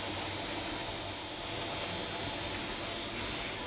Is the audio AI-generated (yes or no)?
no